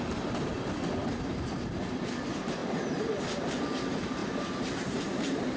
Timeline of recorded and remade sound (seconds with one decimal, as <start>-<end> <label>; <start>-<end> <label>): 0.0-1.0 recorded; 1.0-1.5 remade; 1.5-2.6 recorded; 2.6-3.2 remade; 3.2-4.2 recorded; 4.2-5.6 remade